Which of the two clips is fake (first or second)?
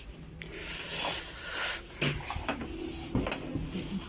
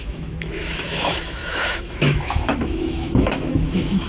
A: second